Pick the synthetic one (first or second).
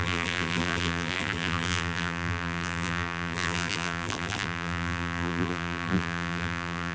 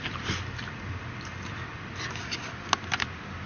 first